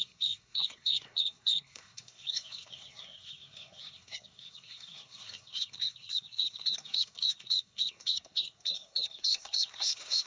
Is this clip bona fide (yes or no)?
no